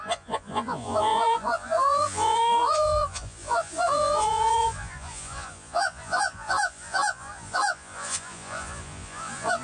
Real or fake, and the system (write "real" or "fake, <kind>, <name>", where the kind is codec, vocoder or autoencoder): fake, vocoder, Vocos